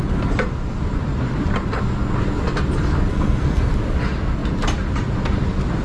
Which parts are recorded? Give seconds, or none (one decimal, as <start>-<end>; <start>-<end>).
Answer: 0.0-3.1; 3.7-5.8

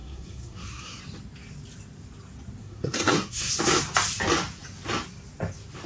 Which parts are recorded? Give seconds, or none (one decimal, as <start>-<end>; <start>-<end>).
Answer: 1.0-2.6; 3.5-5.9

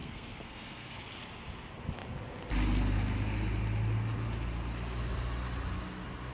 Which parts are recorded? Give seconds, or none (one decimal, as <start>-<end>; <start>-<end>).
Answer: 1.0-6.3

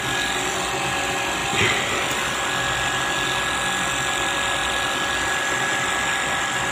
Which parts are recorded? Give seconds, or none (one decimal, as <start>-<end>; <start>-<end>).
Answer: 0.0-6.7

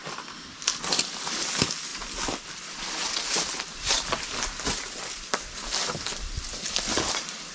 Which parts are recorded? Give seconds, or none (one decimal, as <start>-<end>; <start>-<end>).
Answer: none

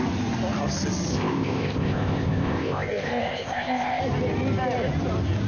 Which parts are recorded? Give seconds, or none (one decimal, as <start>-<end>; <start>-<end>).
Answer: 0.0-1.1; 4.0-5.5

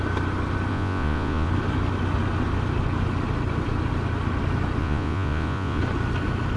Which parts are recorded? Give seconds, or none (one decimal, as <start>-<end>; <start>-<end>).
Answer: 0.0-0.7; 1.5-4.8; 5.8-6.6